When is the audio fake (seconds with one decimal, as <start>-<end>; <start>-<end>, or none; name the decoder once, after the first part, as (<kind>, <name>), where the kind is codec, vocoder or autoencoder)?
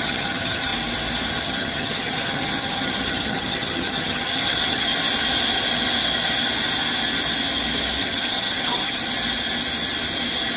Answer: 0.0-0.7 (vocoder, HiFi-GAN); 1.4-4.9; 8.0-9.0